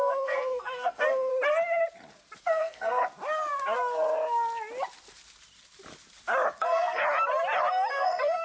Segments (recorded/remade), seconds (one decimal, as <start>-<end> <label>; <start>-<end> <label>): 0.0-1.3 remade; 1.3-2.4 recorded; 2.4-3.0 remade; 3.0-6.6 recorded; 6.6-7.0 remade; 7.0-7.9 recorded; 7.9-8.4 remade